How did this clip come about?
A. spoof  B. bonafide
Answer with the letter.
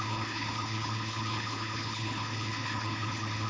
A